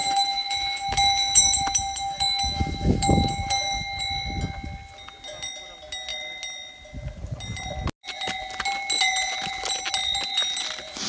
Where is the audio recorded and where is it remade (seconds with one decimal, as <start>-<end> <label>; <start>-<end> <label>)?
0.0-4.0 remade; 4.0-11.1 recorded